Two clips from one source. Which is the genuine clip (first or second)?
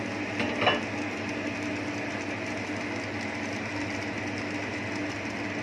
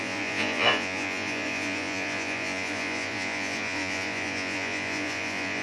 first